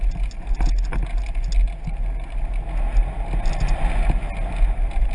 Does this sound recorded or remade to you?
recorded